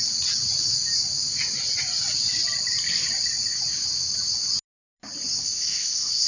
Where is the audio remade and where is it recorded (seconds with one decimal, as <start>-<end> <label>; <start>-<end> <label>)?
0.0-5.4 recorded; 5.4-6.3 remade